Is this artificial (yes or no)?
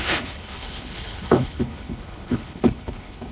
yes